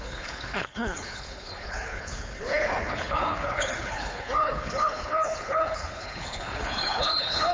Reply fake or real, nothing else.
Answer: fake